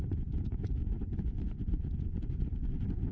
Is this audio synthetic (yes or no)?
yes